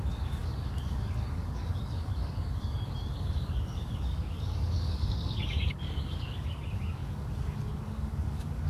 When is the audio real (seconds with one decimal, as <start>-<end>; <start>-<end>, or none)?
none